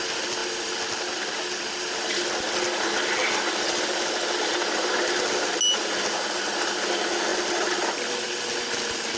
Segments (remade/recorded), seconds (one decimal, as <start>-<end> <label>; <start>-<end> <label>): 0.0-9.2 recorded